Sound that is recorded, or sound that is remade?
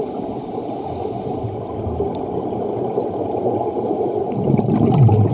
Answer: recorded